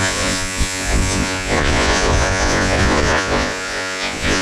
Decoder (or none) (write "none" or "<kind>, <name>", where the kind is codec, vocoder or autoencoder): vocoder, Vocos